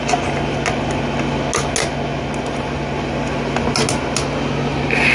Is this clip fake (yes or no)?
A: no